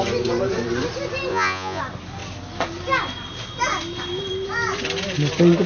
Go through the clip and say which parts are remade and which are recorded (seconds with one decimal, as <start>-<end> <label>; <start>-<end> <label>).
0.0-1.3 recorded; 1.3-1.8 remade; 1.8-5.7 recorded